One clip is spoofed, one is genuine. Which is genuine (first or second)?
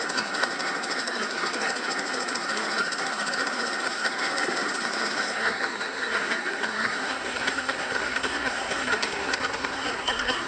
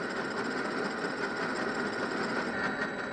second